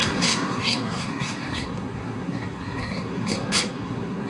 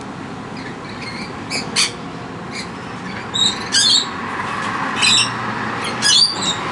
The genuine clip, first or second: second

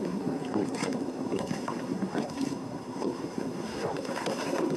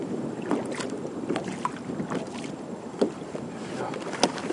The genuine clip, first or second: second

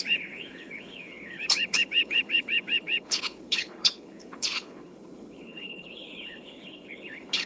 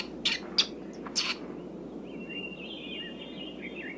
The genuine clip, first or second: second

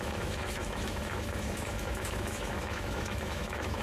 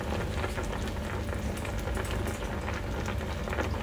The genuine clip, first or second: second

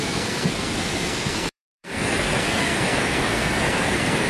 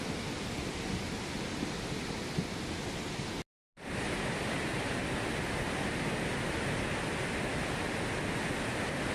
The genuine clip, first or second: second